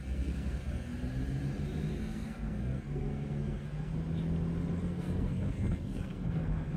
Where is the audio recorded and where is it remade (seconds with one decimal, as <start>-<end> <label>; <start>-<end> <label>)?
0.0-0.9 remade; 0.9-1.9 recorded; 1.9-3.9 remade; 3.9-4.8 recorded; 4.8-6.8 remade